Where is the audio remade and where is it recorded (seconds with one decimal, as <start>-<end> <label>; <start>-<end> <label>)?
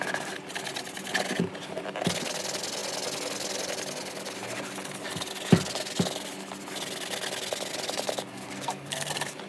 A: 0.0-8.3 recorded; 8.3-9.1 remade; 9.1-9.5 recorded